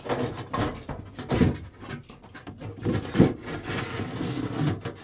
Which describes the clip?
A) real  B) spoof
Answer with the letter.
A